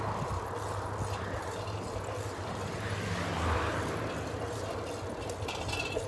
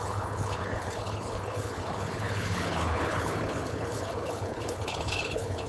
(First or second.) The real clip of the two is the first